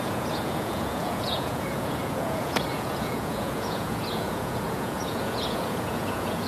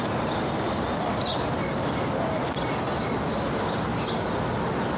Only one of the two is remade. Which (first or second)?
first